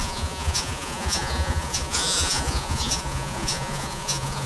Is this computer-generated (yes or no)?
yes